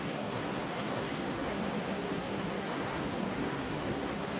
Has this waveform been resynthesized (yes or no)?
yes